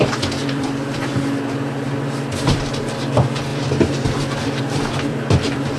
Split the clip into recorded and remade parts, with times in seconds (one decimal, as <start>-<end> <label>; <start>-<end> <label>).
0.0-0.4 recorded; 0.4-1.1 remade; 1.1-3.5 recorded; 3.5-4.6 remade; 4.6-5.1 recorded; 5.1-5.8 remade